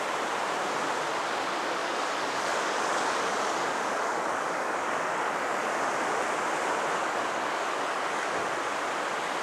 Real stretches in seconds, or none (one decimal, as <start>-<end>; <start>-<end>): 0.0-1.8; 5.8-7.0; 8.4-9.4

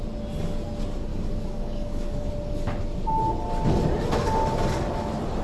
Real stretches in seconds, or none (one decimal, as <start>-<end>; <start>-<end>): 0.0-1.1; 2.3-5.4

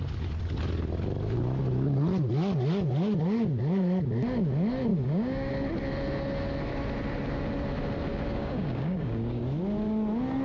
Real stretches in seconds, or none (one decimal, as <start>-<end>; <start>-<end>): 0.0-4.9; 5.5-8.1; 9.4-10.4

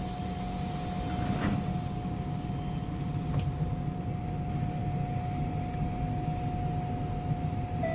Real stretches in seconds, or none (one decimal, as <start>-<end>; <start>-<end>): 0.0-1.7; 2.5-7.9

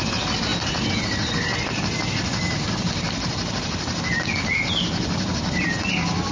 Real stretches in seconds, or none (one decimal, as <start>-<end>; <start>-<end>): 0.0-6.3